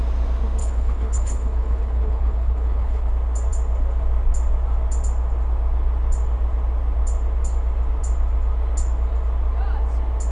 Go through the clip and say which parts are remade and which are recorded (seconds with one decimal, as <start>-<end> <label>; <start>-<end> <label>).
0.0-0.6 recorded; 0.6-3.1 remade; 3.1-10.3 recorded